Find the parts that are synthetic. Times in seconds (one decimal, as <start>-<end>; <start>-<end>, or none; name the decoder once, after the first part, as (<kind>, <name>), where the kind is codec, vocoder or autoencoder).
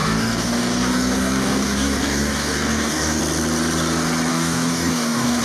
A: 0.0-3.2 (codec, DAC); 4.3-5.4